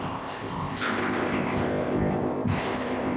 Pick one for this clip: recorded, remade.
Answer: remade